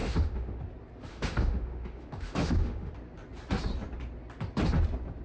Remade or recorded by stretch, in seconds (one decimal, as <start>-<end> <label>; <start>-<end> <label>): 0.0-0.6 remade; 0.6-1.1 recorded; 1.1-2.9 remade; 2.9-5.2 recorded